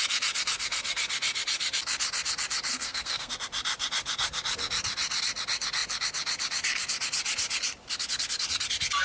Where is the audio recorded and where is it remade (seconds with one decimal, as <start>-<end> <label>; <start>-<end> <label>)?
0.0-2.7 recorded; 2.7-3.3 remade; 3.3-9.0 recorded